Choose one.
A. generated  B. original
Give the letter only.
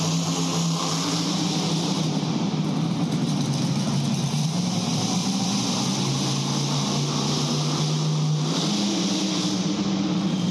B